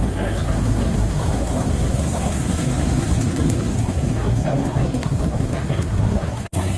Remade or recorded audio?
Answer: remade